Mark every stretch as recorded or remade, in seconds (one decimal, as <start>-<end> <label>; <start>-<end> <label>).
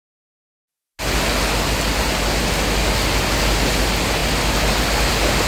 0.0-5.5 recorded